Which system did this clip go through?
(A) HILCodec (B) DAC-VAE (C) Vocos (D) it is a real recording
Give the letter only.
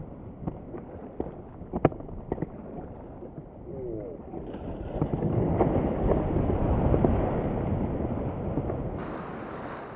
D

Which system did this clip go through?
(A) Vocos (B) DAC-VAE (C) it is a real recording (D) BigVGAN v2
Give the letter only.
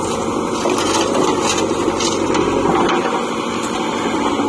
C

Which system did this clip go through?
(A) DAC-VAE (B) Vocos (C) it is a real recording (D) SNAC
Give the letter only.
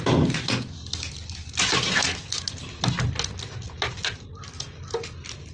C